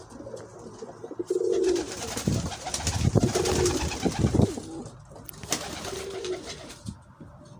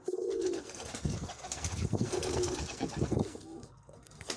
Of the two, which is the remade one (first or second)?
second